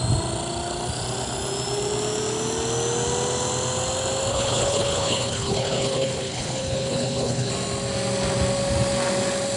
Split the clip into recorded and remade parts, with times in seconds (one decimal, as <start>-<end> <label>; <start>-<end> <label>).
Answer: 0.0-4.3 recorded; 4.3-7.5 remade; 7.5-9.6 recorded